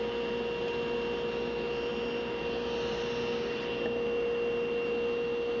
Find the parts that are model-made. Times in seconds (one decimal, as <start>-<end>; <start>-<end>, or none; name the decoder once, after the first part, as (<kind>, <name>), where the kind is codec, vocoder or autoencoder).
none